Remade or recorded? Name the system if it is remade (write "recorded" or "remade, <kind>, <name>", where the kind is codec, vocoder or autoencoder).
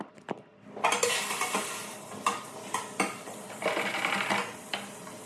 recorded